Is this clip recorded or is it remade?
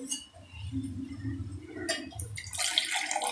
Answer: recorded